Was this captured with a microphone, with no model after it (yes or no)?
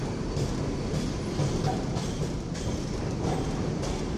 yes